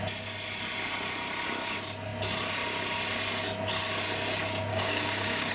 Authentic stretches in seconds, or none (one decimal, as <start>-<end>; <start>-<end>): 0.0-4.7